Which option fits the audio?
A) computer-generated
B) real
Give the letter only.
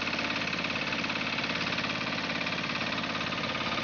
B